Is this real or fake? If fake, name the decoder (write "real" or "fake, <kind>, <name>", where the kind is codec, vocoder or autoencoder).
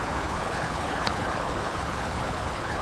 fake, codec, HILCodec